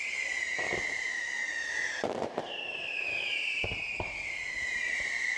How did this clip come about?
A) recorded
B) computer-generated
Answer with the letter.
B